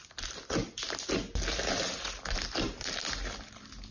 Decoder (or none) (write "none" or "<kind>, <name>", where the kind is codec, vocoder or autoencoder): none